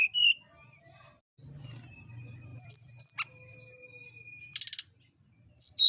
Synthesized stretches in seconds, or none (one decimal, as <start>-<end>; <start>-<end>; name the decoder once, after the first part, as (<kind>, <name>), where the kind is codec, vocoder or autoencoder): 0.0-0.8 (vocoder, BigVGAN v2)